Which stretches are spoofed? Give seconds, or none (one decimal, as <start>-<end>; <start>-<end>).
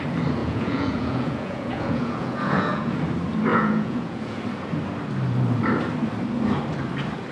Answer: 0.4-3.0; 3.5-4.4